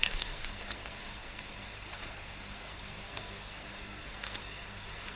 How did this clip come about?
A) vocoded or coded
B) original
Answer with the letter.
A